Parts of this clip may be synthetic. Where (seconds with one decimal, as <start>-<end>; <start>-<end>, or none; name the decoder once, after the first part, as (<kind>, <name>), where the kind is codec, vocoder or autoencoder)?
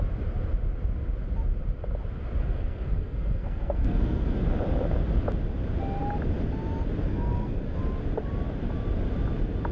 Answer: 2.4-4.4 (codec, SNAC); 7.1-7.8